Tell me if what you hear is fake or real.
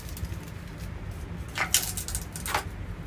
real